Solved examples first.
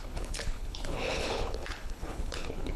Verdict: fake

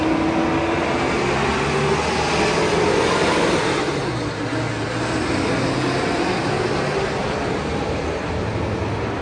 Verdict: real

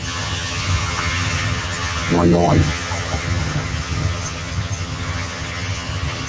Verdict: fake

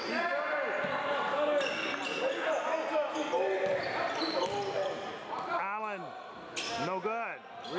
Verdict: real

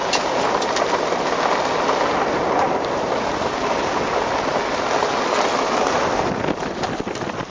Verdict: real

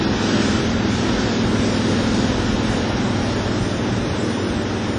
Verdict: real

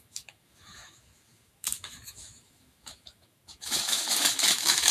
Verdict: fake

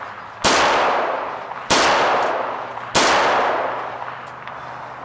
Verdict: real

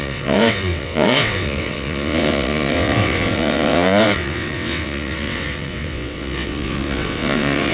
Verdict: fake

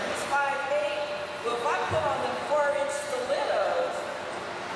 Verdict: real